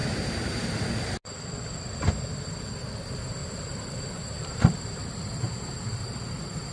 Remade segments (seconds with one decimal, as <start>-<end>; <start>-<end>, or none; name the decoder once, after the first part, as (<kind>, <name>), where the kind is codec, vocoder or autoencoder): 0.0-0.7 (vocoder, BigVGAN v2); 3.4-6.7